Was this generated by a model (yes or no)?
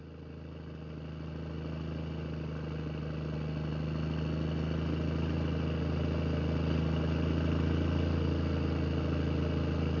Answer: no